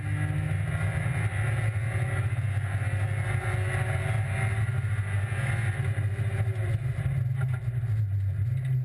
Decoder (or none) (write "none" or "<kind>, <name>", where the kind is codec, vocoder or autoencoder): none